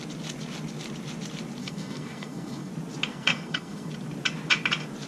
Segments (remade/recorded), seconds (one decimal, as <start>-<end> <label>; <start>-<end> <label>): 0.0-1.6 recorded; 1.6-2.7 remade; 2.7-3.1 recorded; 3.1-3.9 remade; 3.9-5.1 recorded